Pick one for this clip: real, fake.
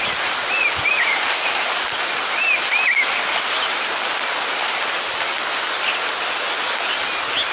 real